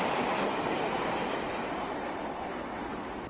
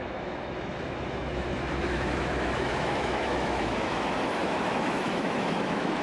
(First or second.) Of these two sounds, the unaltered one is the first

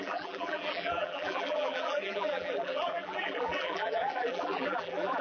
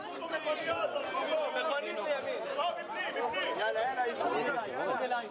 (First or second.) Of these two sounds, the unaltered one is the second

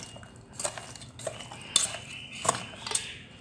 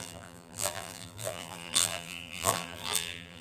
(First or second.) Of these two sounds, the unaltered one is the first